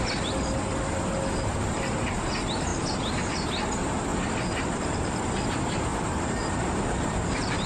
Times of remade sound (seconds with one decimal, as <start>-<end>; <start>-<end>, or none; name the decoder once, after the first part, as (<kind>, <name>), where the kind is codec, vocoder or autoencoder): 4.1-4.7 (vocoder, BigVGAN v2); 5.9-7.7